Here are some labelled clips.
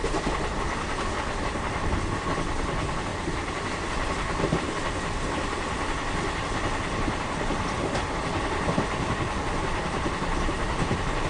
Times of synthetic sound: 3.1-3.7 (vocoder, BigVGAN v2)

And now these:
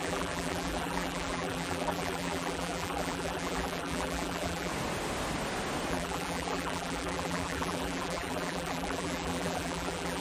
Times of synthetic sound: 0.0-4.7 (vocoder, BigVGAN v2); 5.9-10.2

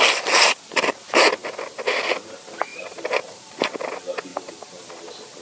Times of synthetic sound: 2.7-3.7 (vocoder, BigVGAN v2); 4.3-4.9